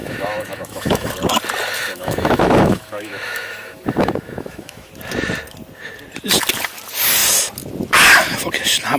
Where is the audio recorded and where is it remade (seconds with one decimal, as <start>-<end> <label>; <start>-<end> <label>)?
0.0-1.1 remade; 1.1-1.8 recorded; 1.8-4.9 remade; 4.9-9.0 recorded